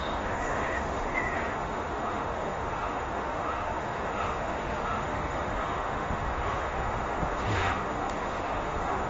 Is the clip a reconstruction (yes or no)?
yes